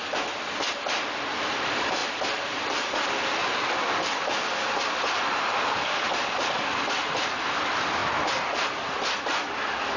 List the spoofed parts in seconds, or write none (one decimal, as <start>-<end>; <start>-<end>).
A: 0.0-2.0; 2.8-8.0; 9.2-10.0